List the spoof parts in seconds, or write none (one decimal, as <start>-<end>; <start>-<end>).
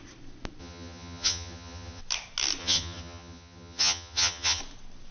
0.6-2.0; 2.6-4.6